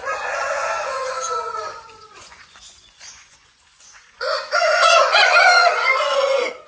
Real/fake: fake